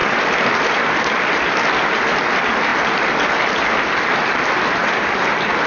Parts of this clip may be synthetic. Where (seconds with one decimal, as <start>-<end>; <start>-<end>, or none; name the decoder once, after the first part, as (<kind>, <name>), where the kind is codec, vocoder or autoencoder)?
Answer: 0.0-1.5 (vocoder, BigVGAN v2); 2.7-4.6